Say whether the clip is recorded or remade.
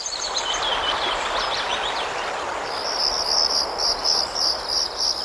recorded